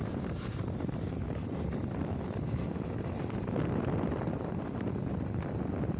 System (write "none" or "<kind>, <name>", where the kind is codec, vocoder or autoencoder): none